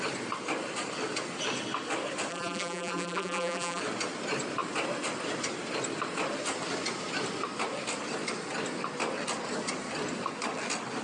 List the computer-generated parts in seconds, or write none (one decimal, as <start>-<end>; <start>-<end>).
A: 2.3-3.8

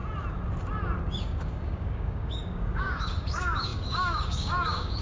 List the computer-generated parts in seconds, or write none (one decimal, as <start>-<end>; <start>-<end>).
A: 1.0-5.0